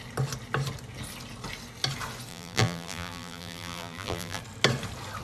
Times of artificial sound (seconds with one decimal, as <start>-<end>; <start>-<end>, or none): 2.3-4.4